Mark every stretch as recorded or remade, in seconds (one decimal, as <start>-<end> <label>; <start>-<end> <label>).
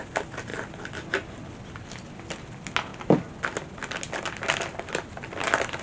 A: 0.0-5.8 recorded